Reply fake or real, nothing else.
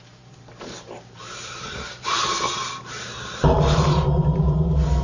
fake